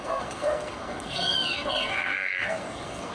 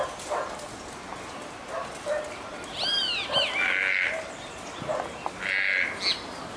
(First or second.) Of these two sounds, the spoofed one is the first